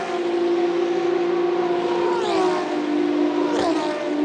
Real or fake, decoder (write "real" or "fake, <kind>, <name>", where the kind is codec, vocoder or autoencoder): real